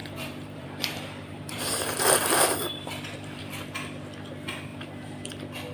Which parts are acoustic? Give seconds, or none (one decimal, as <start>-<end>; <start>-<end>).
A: 3.4-4.7; 5.3-5.7